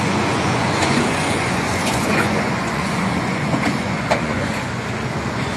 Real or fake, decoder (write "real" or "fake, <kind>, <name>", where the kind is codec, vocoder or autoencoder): fake, vocoder, Vocos